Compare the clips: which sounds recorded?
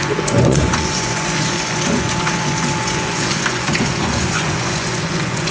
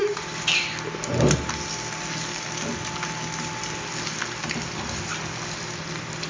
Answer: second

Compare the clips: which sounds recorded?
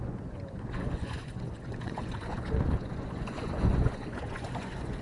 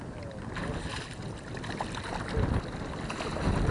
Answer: second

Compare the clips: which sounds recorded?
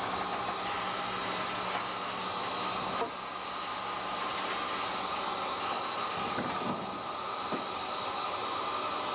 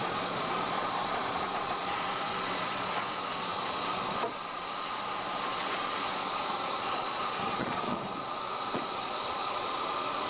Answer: first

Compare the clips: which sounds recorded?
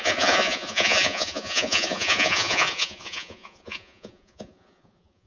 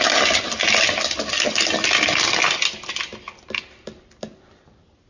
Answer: second